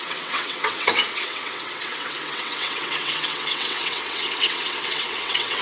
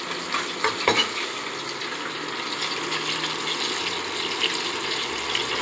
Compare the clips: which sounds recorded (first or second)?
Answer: second